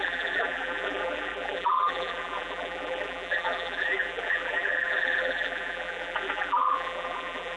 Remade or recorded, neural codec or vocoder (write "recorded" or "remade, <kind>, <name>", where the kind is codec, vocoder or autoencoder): remade, vocoder, BigVGAN v2